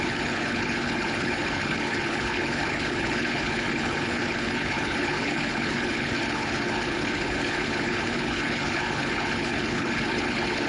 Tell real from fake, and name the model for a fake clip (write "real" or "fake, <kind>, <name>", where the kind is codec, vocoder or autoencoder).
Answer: fake, codec, HILCodec